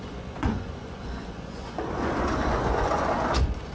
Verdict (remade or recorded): remade